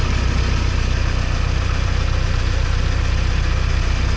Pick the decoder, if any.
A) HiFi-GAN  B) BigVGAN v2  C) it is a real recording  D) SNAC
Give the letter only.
C